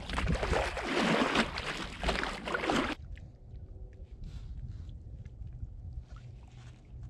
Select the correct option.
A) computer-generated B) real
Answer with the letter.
B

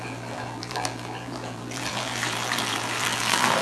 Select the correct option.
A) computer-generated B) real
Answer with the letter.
A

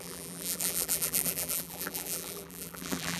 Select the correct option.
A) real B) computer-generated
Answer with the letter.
B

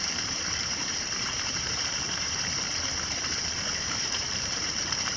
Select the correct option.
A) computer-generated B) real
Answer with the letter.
A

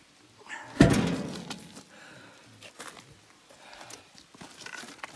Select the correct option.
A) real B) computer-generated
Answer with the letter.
A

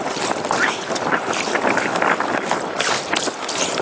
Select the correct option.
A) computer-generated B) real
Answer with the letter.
B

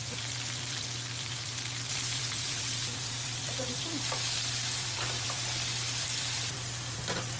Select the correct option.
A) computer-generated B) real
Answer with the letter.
A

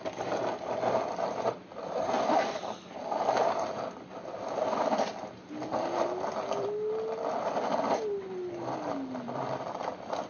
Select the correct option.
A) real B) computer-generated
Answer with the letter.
B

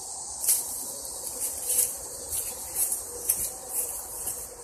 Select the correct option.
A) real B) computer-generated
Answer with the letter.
B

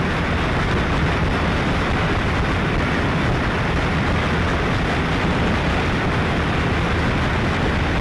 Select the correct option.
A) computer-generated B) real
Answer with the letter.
B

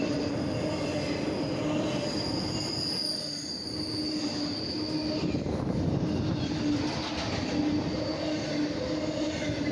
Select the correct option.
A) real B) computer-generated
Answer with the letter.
A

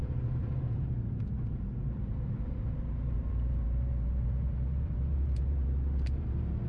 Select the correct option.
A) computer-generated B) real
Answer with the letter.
A